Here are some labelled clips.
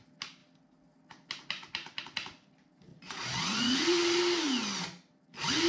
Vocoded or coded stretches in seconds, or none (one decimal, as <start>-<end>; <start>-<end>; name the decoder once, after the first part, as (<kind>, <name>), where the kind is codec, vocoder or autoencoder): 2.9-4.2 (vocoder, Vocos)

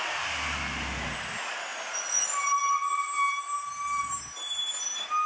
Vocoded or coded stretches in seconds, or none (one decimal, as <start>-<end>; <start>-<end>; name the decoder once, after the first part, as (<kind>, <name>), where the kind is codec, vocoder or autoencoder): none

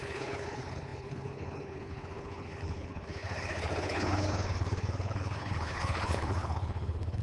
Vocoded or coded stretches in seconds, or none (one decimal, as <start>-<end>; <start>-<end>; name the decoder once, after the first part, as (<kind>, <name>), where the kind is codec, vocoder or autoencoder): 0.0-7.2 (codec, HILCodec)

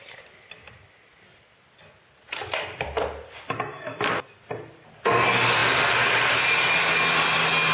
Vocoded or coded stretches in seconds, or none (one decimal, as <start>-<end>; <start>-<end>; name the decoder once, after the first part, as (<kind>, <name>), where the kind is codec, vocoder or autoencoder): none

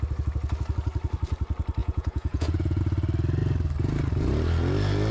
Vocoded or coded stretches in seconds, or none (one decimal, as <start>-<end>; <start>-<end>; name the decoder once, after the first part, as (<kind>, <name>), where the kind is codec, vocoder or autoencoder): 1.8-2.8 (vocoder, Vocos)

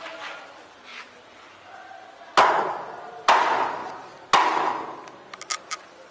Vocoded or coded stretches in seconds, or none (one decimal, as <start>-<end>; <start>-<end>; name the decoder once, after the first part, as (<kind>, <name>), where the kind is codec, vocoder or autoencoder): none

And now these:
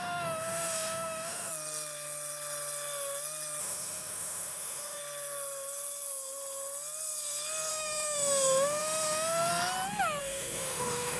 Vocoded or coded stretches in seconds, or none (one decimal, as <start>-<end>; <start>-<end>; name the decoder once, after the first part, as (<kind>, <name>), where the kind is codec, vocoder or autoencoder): 0.0-1.5 (autoencoder, DAC-VAE); 3.6-5.0; 7.7-9.5; 10.2-11.2

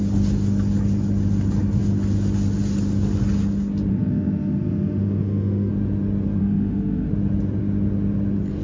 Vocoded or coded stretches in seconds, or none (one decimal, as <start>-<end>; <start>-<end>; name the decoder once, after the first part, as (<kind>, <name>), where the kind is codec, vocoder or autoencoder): 3.9-5.7 (autoencoder, DAC-VAE); 6.4-7.1